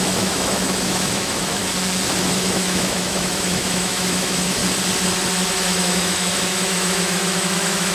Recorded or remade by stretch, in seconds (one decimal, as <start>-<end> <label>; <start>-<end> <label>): 0.0-1.6 remade; 1.6-2.2 recorded; 2.2-4.6 remade; 4.6-5.5 recorded; 5.5-7.9 remade